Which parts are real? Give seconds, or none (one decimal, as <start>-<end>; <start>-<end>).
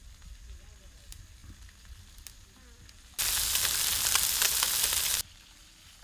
0.0-6.0